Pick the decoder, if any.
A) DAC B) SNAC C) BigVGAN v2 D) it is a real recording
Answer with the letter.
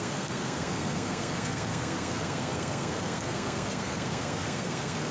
B